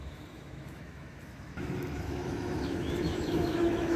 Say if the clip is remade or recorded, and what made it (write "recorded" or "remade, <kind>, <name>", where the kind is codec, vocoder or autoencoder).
remade, autoencoder, DAC-VAE